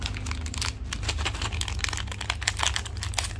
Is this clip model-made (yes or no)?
no